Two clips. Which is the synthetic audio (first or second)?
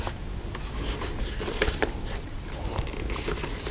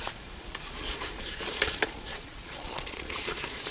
second